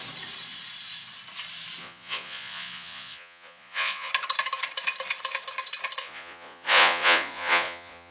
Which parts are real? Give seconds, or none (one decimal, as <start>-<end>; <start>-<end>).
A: 0.0-1.8; 4.1-6.0